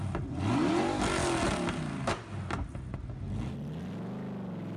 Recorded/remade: recorded